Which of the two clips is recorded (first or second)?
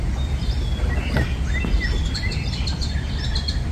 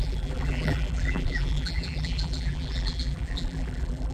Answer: first